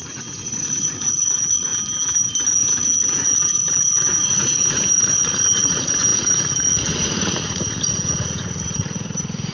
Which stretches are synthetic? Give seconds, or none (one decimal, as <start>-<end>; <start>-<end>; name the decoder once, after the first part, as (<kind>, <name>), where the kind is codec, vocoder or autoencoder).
0.0-1.7 (vocoder, Vocos); 2.5-9.5